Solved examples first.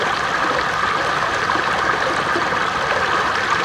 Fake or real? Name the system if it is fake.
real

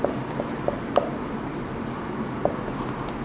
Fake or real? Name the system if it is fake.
real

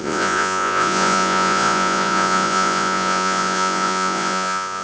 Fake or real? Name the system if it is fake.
fake, vocoder, Vocos